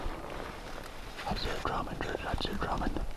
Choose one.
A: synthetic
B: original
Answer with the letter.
A